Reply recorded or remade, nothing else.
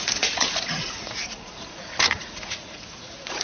remade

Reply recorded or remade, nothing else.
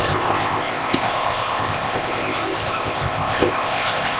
remade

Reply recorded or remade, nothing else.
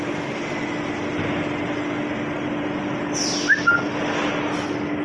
recorded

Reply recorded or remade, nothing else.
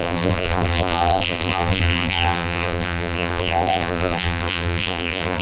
remade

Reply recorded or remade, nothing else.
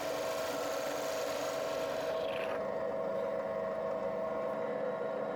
recorded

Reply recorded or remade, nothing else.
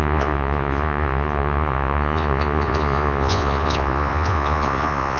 remade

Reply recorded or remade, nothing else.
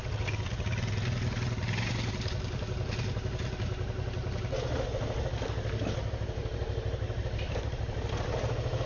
recorded